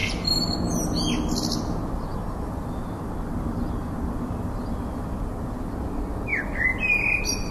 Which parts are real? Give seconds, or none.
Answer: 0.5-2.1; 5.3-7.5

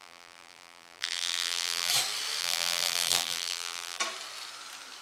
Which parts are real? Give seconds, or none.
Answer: 1.9-2.4; 4.0-5.0

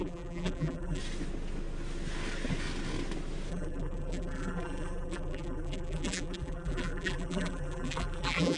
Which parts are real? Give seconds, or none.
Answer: 1.0-3.5

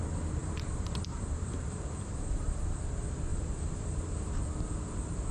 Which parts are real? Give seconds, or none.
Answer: 0.0-0.4; 2.6-3.3; 4.4-5.3

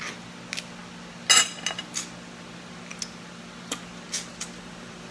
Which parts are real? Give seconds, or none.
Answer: 0.0-4.3

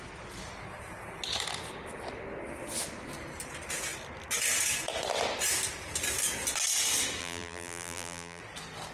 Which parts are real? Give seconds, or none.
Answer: 0.0-7.2; 8.4-8.9